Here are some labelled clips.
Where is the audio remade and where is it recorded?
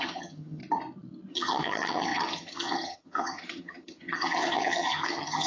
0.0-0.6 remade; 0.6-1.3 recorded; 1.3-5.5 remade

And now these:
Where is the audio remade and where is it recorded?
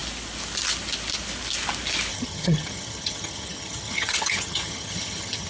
0.0-2.1 recorded; 2.1-5.5 remade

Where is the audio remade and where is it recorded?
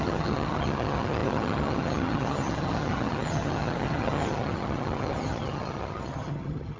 0.0-6.8 remade